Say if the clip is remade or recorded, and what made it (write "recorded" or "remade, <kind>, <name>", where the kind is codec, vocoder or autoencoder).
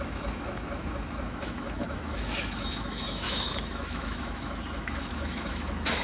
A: remade, autoencoder, DAC-VAE